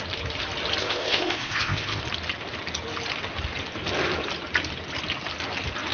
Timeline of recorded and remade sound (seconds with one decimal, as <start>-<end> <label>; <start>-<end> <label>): 0.0-0.8 recorded; 0.8-2.0 remade; 2.0-5.9 recorded